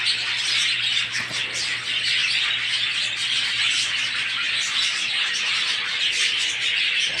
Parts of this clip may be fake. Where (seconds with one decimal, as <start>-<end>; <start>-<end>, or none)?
none